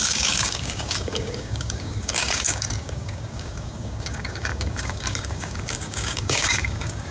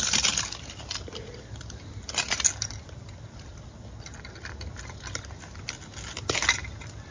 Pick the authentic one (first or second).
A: second